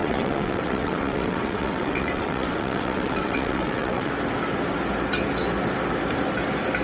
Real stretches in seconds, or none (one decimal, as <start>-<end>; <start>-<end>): 4.1-6.8